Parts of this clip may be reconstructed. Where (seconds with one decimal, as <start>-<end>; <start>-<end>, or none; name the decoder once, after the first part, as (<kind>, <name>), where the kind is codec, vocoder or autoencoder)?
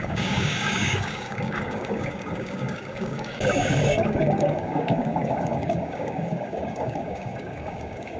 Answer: 0.0-8.2 (codec, DAC)